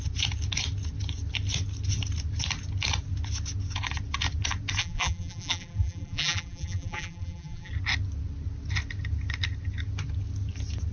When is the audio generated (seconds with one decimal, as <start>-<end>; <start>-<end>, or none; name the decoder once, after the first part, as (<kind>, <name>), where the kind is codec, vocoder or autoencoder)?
4.8-7.7 (vocoder, BigVGAN v2)